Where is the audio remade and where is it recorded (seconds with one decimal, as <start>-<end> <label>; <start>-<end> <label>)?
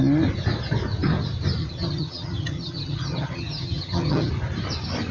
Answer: 0.0-1.6 recorded; 1.6-4.3 remade; 4.3-5.1 recorded